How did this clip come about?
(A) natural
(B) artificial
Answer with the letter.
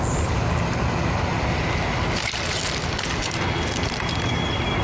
A